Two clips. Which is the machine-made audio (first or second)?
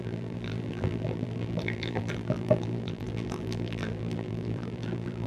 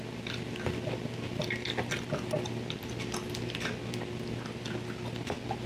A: first